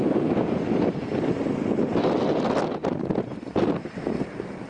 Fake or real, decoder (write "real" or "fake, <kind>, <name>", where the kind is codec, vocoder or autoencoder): real